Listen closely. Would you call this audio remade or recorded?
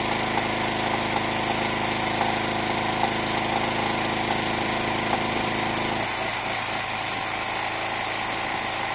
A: recorded